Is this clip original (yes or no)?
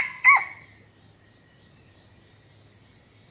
yes